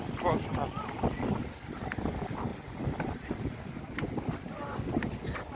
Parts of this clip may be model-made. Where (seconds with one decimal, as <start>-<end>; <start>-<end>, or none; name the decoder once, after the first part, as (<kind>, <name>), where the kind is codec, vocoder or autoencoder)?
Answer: none